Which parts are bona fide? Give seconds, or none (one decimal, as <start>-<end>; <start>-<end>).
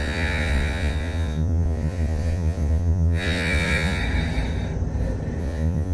4.0-5.4